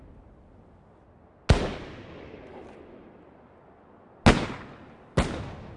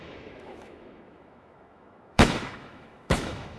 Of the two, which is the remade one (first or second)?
second